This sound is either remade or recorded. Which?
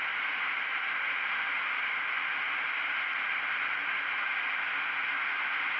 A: recorded